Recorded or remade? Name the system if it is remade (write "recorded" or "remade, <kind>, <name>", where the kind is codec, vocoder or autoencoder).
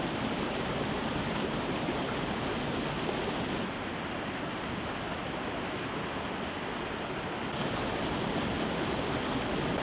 recorded